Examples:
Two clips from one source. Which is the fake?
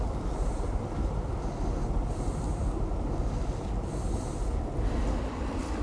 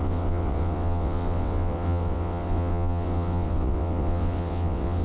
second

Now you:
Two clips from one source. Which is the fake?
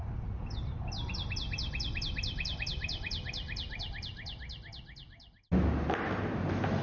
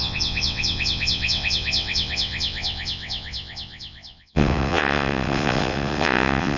second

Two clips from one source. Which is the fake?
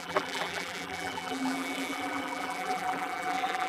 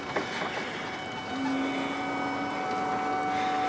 first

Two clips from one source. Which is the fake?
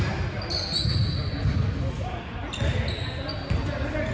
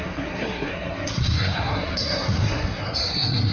second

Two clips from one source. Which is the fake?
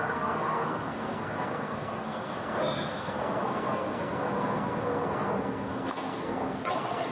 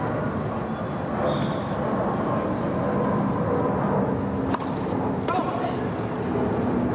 first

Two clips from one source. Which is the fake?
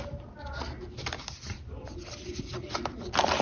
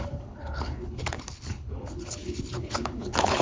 second